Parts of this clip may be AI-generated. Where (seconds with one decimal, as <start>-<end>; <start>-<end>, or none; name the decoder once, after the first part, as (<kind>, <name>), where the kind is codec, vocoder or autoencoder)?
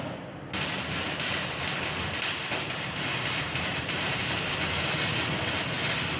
3.7-4.2 (vocoder, BigVGAN v2)